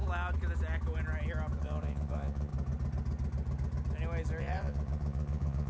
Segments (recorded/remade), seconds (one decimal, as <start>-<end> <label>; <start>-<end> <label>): 0.0-1.6 recorded; 1.6-2.5 remade; 2.5-4.4 recorded; 4.4-5.7 remade